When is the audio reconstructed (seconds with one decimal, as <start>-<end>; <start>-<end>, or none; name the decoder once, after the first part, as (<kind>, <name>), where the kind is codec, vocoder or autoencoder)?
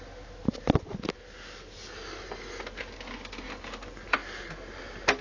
none